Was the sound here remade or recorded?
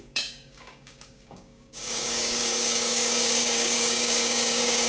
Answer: remade